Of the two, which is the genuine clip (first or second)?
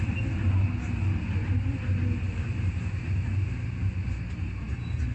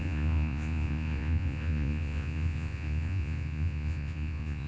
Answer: first